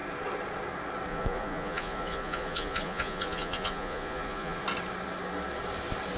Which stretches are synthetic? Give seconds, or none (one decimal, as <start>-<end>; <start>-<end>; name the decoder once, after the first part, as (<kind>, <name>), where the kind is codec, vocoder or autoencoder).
1.1-4.6 (vocoder, Vocos)